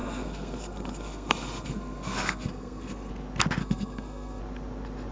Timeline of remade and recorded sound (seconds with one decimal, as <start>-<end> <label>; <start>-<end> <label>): 0.0-3.1 remade; 3.1-3.6 recorded; 3.6-4.4 remade; 4.4-5.1 recorded